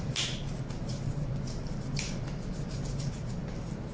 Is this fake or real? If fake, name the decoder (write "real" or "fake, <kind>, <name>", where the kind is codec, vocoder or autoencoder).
real